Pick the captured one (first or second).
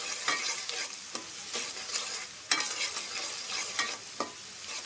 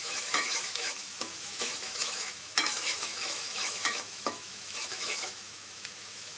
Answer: first